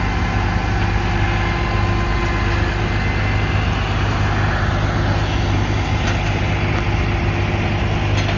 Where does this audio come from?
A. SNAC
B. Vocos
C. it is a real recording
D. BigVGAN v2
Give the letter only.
C